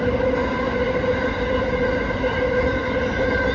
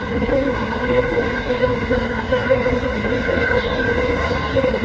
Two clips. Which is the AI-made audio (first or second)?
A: second